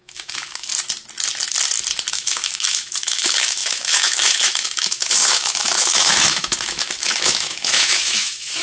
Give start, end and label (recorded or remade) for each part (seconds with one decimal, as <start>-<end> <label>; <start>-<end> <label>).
0.0-0.7 remade; 0.7-2.1 recorded; 2.1-8.6 remade